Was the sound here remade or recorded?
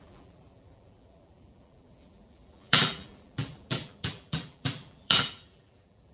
remade